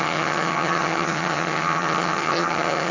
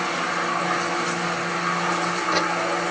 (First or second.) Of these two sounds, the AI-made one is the first